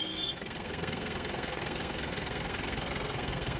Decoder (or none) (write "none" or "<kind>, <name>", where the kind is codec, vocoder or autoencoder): codec, SNAC